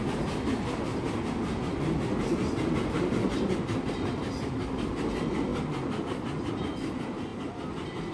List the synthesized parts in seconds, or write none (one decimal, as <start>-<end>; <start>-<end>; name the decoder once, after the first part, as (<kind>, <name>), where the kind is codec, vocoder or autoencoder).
0.9-4.1 (vocoder, BigVGAN v2); 7.3-8.1